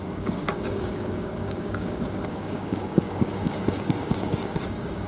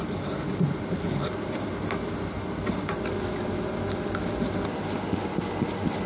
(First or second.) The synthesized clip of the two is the first